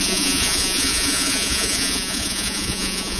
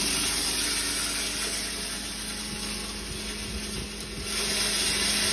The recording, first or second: second